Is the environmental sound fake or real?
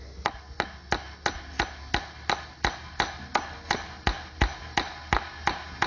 real